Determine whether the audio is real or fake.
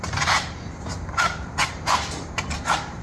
fake